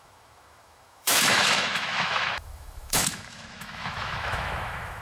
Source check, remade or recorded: remade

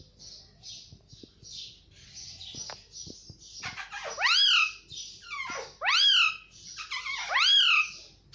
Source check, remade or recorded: recorded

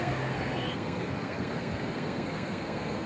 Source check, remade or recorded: remade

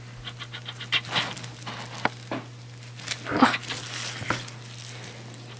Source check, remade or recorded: recorded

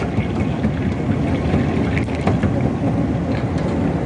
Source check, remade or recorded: recorded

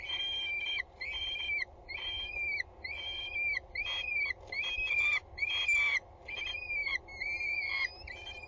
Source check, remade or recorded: recorded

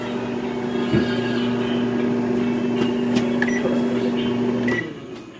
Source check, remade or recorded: recorded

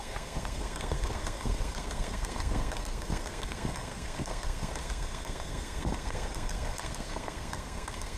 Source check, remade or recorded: remade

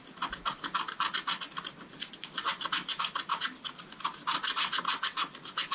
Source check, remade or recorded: recorded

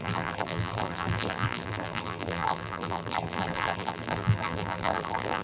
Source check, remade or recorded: remade